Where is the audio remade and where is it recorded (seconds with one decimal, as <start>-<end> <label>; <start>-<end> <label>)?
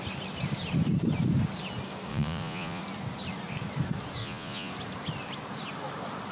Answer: 0.0-2.1 recorded; 2.1-2.8 remade; 2.8-4.2 recorded; 4.2-4.7 remade; 4.7-6.3 recorded